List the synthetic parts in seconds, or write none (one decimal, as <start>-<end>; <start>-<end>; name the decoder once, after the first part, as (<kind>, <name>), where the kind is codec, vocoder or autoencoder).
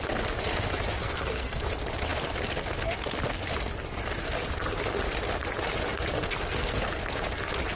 1.0-1.7 (codec, SNAC); 6.2-6.9